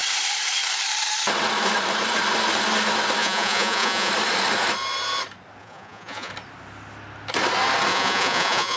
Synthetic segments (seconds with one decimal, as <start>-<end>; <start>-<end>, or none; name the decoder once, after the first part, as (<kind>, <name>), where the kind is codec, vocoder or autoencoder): 3.2-4.1 (vocoder, Vocos); 5.6-6.3; 7.9-8.8